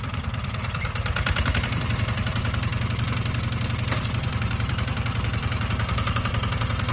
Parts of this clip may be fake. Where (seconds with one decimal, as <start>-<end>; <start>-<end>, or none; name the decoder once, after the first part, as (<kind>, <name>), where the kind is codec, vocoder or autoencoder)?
0.0-2.7 (vocoder, BigVGAN v2); 4.0-6.9